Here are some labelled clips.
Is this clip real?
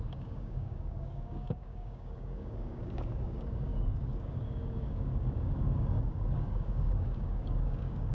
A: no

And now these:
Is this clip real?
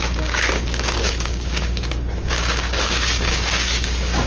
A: no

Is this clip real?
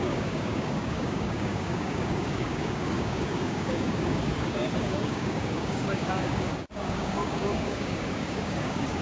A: no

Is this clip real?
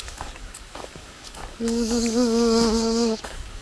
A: no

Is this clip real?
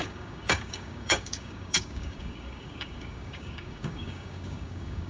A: no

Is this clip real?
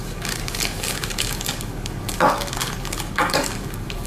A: no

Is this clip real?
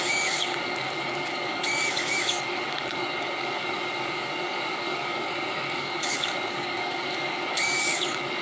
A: no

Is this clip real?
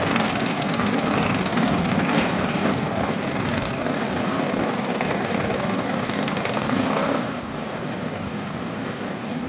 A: no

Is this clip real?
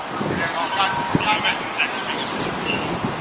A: yes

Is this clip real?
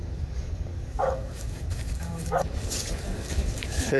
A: no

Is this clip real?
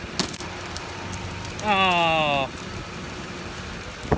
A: yes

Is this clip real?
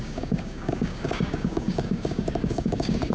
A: no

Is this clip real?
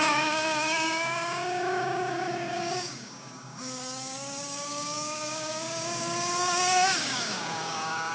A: no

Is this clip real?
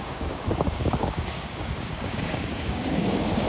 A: no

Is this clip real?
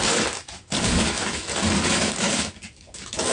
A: no